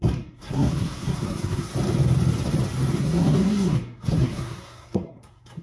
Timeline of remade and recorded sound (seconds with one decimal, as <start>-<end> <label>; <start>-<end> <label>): 0.0-1.7 remade; 1.7-3.0 recorded; 3.0-5.6 remade